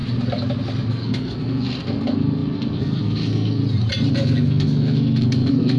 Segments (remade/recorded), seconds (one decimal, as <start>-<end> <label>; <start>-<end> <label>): 0.0-0.9 recorded; 0.9-3.6 remade; 3.6-4.1 recorded; 4.1-5.8 remade